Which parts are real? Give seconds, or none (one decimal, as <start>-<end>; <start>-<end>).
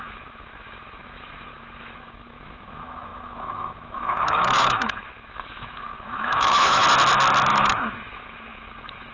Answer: 6.8-7.5